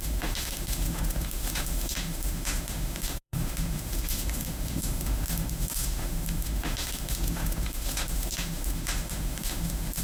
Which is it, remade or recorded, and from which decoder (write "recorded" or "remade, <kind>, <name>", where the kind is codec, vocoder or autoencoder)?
remade, autoencoder, DAC-VAE